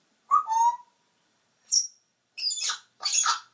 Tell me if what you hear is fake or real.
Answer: fake